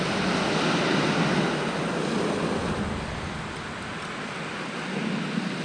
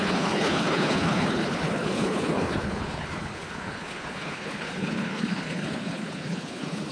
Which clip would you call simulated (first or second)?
second